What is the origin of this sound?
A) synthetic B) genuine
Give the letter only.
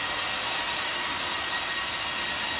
B